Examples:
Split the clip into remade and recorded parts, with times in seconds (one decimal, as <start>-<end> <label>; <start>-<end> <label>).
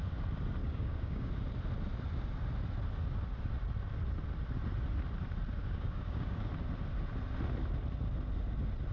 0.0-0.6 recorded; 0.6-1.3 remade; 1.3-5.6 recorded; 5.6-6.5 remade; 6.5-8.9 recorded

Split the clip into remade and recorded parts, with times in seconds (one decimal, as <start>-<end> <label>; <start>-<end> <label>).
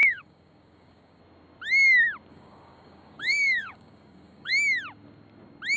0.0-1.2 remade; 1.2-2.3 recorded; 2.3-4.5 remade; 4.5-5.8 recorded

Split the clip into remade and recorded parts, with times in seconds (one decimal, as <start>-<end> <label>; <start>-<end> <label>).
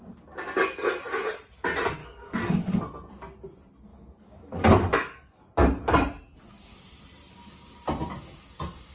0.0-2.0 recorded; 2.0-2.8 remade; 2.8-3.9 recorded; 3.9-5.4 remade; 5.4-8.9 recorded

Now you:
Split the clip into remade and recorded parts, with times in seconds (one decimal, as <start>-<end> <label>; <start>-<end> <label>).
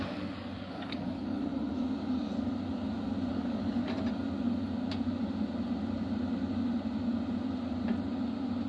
0.0-1.5 remade; 1.5-3.3 recorded; 3.3-3.8 remade; 3.8-8.7 recorded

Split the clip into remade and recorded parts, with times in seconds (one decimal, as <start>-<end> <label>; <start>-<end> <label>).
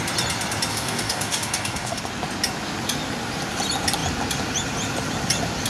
0.0-0.7 recorded; 0.7-2.0 remade; 2.0-5.7 recorded